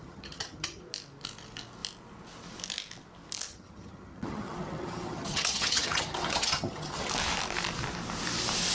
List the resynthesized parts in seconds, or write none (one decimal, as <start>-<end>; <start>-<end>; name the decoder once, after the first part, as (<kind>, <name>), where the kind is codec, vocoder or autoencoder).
0.0-0.8 (vocoder, HiFi-GAN); 3.5-7.1

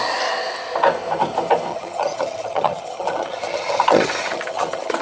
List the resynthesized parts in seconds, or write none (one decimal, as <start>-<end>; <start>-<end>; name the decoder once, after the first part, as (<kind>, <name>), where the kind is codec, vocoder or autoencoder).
1.7-5.0 (vocoder, HiFi-GAN)

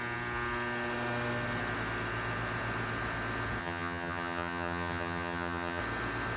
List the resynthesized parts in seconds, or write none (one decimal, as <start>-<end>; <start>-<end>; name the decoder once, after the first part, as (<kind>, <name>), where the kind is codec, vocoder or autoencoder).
3.6-5.8 (vocoder, HiFi-GAN)

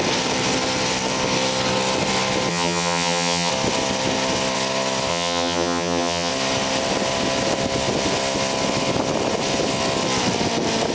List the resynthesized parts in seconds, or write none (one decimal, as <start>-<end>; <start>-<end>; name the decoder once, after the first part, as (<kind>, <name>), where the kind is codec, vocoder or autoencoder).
2.5-3.5 (vocoder, HiFi-GAN); 5.1-6.3